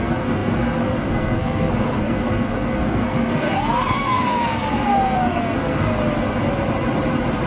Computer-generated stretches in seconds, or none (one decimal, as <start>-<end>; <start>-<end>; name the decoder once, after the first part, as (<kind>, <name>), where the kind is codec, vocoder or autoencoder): 0.0-5.9 (codec, SNAC)